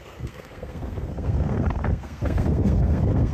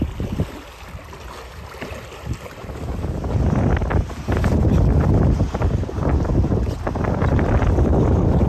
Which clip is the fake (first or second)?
first